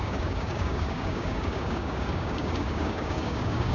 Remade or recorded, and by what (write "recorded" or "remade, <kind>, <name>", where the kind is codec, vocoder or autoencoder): remade, codec, DAC